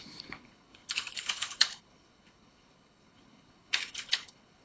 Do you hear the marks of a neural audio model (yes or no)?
yes